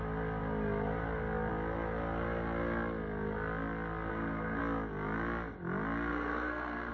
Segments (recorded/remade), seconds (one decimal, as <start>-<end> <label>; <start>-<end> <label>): 0.0-4.1 recorded; 4.1-4.6 remade; 4.6-6.1 recorded; 6.1-6.9 remade